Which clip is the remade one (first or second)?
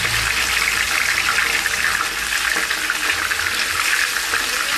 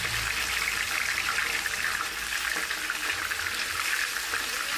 second